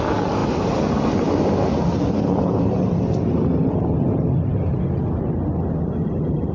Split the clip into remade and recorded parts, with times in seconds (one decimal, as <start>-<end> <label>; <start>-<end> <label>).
0.0-6.5 recorded